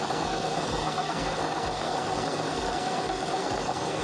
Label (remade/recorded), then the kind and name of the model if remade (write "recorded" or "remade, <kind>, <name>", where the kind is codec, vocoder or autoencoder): remade, codec, SNAC